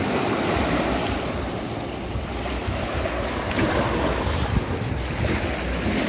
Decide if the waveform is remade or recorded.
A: recorded